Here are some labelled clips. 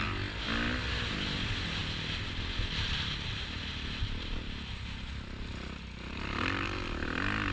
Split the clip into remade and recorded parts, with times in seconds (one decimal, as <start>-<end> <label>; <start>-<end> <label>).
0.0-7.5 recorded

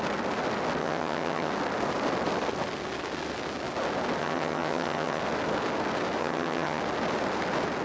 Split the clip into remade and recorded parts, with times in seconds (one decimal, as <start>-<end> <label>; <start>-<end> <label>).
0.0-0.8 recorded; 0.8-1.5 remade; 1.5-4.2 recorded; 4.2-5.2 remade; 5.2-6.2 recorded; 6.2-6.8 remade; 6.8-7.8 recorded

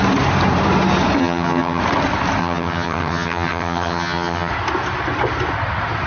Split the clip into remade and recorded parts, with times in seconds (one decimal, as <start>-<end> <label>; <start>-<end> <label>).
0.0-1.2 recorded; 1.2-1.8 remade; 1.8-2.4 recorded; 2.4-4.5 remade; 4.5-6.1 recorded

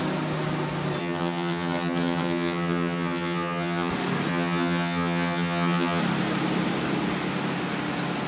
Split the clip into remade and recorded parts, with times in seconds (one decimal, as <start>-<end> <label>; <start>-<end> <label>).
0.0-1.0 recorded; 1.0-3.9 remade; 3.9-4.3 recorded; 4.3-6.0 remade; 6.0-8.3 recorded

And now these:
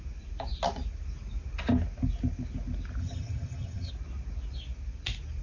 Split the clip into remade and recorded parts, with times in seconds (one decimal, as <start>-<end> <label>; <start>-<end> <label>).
0.0-3.0 recorded; 3.0-3.9 remade; 3.9-5.4 recorded

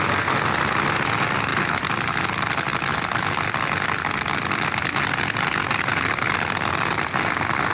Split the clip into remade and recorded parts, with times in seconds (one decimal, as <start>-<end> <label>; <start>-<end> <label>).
0.0-7.7 recorded